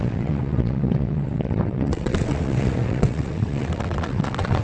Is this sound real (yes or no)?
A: no